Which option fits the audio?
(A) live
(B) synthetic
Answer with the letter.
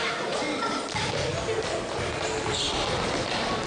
A